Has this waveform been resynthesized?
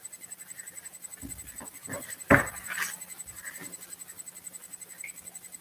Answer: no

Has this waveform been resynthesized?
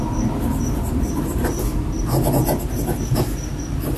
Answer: no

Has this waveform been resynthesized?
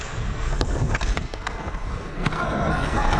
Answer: yes